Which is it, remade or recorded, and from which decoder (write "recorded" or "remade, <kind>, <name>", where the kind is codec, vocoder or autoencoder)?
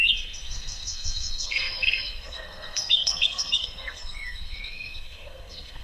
remade, codec, SNAC